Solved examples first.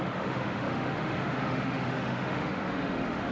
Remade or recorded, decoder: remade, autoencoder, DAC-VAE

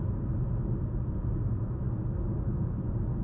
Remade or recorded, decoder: recorded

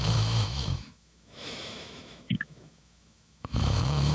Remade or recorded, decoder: remade, autoencoder, DAC-VAE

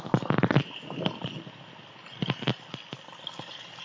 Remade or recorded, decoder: recorded